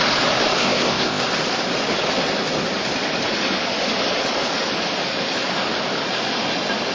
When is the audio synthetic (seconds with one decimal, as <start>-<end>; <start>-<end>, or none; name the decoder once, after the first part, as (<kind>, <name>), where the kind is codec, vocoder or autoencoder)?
0.6-1.2 (codec, ZipCodec)